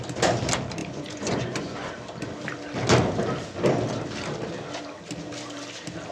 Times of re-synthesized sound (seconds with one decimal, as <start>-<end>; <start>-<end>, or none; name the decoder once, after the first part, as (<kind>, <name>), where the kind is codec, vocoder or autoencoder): 0.8-1.9 (vocoder, Vocos)